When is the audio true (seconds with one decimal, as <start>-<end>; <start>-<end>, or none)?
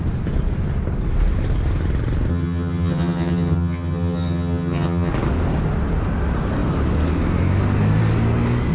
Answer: 0.0-2.3; 5.1-8.7